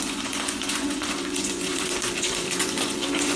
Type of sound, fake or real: fake